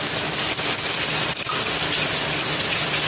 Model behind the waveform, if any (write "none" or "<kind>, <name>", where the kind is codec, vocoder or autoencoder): none